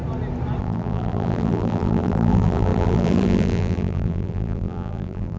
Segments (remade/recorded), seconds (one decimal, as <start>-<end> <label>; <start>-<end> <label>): 0.0-0.6 recorded; 0.6-5.4 remade

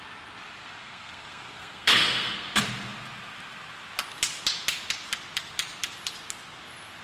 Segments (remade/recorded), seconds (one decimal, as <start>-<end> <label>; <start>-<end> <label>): 0.0-0.6 recorded; 0.6-2.6 remade; 2.6-7.0 recorded

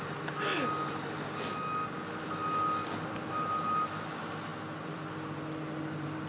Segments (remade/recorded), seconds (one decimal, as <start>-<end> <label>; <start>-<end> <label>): 0.0-6.3 recorded

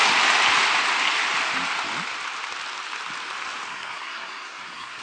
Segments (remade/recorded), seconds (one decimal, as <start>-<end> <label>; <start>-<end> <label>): 0.0-3.7 recorded; 3.7-5.0 remade

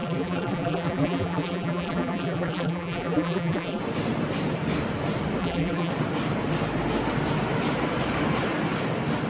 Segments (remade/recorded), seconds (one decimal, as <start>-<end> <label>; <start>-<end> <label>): 0.0-3.8 remade; 3.8-5.4 recorded; 5.4-5.9 remade; 5.9-9.3 recorded

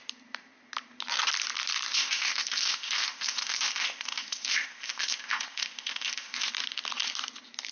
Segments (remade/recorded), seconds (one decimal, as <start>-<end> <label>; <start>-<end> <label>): 0.0-1.9 recorded; 1.9-6.5 remade; 6.5-7.7 recorded

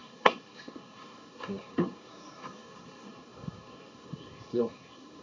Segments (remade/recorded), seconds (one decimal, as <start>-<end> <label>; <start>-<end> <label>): 0.0-5.2 remade